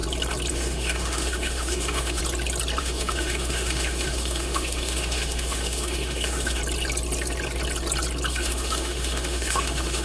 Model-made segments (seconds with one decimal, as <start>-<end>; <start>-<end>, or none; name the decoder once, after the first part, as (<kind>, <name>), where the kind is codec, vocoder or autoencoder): 0.5-2.2 (autoencoder, DAC-VAE); 2.8-6.6; 8.3-10.0